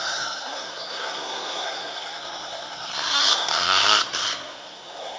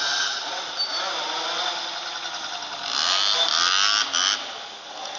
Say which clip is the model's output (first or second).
first